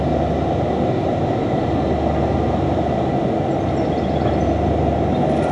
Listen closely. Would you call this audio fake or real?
real